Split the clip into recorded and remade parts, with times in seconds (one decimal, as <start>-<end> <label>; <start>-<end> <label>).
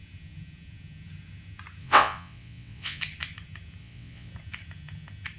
0.0-1.8 recorded; 1.8-3.0 remade; 3.0-3.8 recorded; 3.8-4.3 remade; 4.3-5.4 recorded